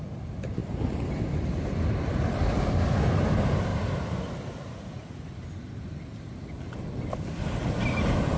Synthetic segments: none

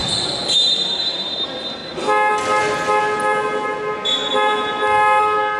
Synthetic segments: 0.0-1.8 (vocoder, BigVGAN v2)

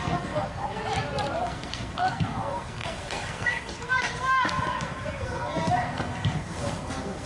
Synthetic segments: 0.0-0.8 (codec, SNAC); 1.4-7.3

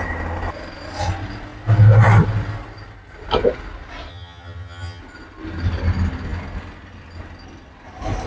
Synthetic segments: 4.1-5.0 (vocoder, HiFi-GAN)

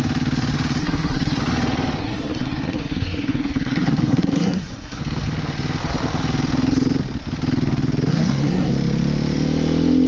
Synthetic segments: 0.8-1.4 (codec, SNAC); 2.0-5.0; 8.1-8.7

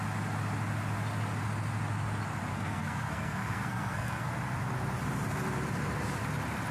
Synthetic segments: 2.5-4.3 (codec, SNAC)

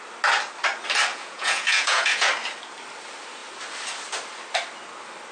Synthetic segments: 1.1-2.3 (vocoder, Vocos)